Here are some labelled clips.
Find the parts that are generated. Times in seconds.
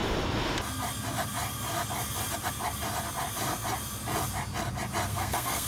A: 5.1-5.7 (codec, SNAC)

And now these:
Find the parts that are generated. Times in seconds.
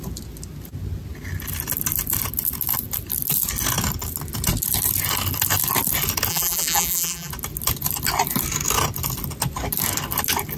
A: 6.3-7.3 (vocoder, BigVGAN v2)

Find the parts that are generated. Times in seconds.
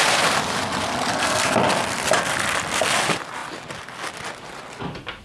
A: 1.1-1.6 (codec, SNAC)